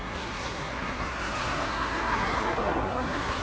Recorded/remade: remade